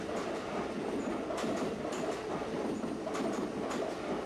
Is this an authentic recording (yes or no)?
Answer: yes